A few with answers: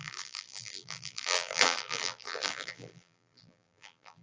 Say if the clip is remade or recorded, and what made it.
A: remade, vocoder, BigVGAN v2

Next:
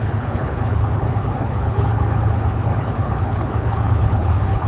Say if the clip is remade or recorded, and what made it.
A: remade, codec, HILCodec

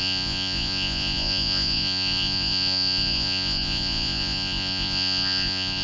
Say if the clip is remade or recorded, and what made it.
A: remade, vocoder, Vocos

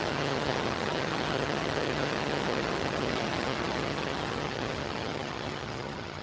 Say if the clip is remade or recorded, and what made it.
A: remade, vocoder, HiFi-GAN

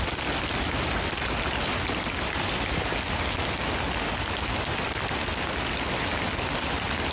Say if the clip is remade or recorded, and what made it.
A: recorded